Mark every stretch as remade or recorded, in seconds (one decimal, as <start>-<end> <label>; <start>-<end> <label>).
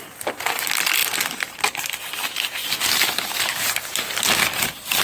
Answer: 0.0-5.0 recorded